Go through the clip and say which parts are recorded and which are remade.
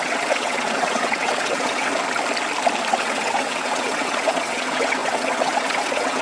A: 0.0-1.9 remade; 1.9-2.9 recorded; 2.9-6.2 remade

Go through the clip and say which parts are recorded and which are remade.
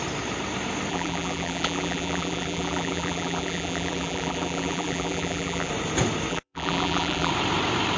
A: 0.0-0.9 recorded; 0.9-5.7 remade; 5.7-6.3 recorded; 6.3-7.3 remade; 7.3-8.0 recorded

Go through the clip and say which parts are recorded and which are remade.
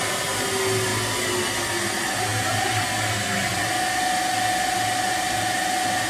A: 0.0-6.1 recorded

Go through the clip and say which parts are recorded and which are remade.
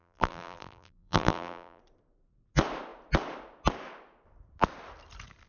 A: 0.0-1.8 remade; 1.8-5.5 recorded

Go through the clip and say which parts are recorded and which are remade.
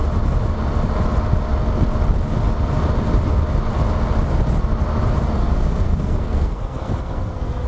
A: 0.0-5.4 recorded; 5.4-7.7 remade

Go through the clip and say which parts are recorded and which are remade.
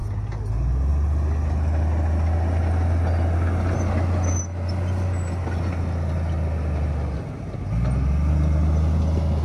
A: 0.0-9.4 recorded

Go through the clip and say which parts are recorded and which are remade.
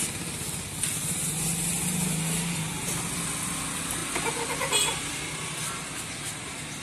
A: 0.0-6.8 recorded